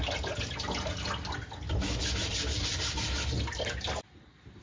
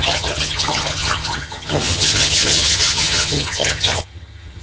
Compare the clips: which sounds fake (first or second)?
second